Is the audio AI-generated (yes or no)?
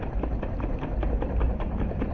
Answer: yes